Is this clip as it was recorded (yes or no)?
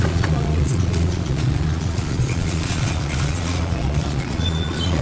no